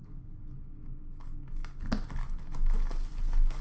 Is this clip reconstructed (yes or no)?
no